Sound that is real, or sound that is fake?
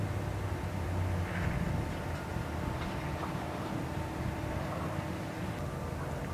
real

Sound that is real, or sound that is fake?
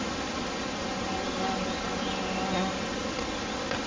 real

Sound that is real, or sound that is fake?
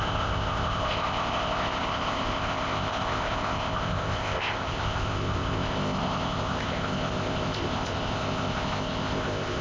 fake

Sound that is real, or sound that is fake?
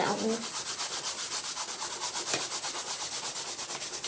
real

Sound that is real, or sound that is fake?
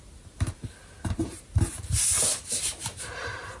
fake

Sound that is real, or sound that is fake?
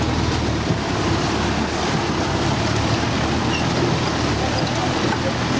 real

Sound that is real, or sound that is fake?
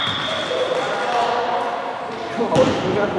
real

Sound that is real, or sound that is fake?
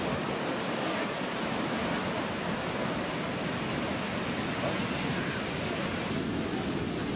real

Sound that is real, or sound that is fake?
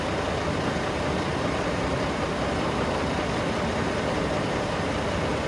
real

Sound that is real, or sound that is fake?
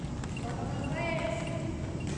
real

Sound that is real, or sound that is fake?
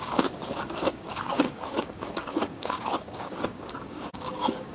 fake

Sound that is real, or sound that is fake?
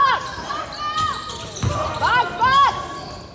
real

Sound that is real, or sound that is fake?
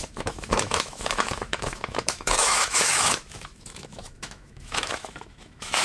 fake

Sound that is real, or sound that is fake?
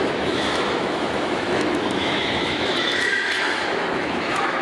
fake